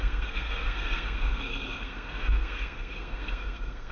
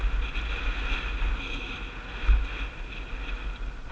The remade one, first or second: first